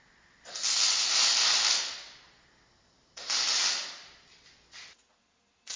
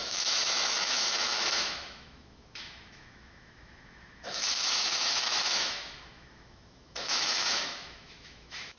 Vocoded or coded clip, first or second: second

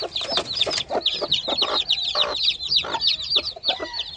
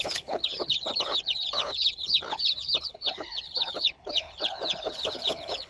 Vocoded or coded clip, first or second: second